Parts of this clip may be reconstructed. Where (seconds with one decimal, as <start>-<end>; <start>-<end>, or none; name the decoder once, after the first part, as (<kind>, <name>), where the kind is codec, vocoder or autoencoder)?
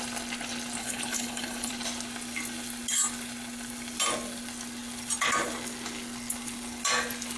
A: 0.8-1.7 (codec, HILCodec)